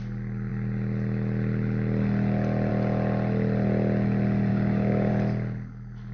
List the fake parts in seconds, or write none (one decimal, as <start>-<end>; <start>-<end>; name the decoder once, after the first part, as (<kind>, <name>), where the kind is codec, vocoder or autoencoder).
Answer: 4.5-5.1 (codec, DAC)